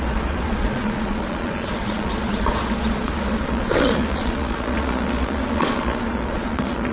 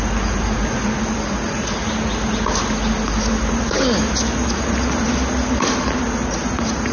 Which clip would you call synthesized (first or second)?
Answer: first